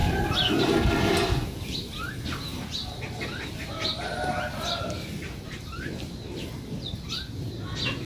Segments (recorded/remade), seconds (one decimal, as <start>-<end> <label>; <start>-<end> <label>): 0.0-2.5 recorded; 2.5-4.4 remade; 4.4-8.0 recorded